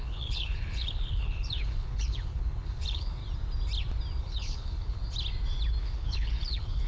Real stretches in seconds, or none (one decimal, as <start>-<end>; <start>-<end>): 3.2-4.2; 5.0-5.8